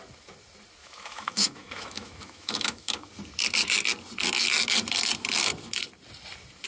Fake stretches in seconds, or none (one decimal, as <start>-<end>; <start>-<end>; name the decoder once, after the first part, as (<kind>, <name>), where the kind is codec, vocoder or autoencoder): 0.8-3.1 (autoencoder, DAC-VAE)